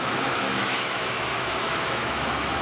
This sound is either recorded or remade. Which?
remade